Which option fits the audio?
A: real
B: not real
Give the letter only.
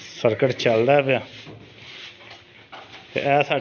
A